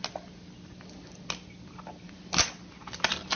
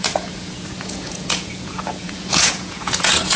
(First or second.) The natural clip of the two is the first